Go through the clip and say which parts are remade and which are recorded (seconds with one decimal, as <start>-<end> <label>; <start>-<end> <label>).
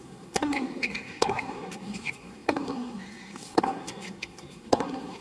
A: 0.0-5.2 remade